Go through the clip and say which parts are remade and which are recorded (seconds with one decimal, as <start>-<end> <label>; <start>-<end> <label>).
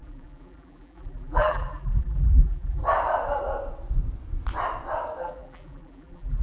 0.0-2.8 remade; 2.8-5.2 recorded; 5.2-6.4 remade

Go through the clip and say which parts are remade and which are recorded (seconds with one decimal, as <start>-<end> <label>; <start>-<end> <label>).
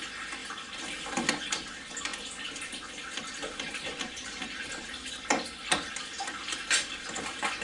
0.0-7.6 recorded